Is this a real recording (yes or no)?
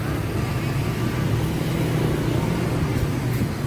yes